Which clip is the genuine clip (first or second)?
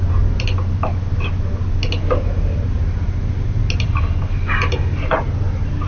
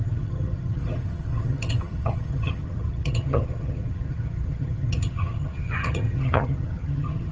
first